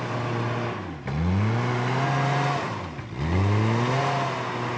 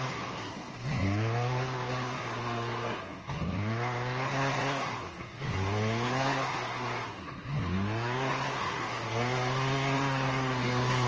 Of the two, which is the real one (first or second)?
first